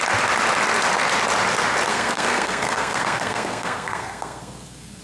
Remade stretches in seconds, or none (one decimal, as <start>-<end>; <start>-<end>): 1.9-5.0